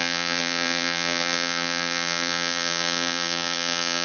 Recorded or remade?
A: remade